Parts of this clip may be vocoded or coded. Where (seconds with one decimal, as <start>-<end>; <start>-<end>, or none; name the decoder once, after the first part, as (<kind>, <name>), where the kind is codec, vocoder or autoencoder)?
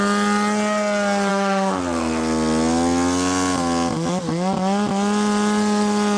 1.3-1.8 (autoencoder, DAC-VAE)